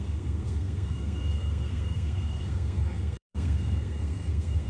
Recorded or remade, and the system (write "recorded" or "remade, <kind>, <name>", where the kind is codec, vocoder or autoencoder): remade, codec, SNAC